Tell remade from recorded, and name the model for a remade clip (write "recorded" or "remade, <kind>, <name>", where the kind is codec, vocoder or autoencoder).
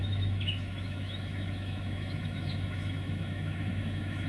remade, autoencoder, DAC-VAE